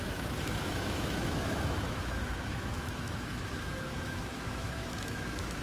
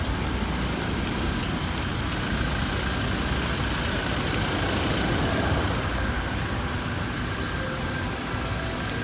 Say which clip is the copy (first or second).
first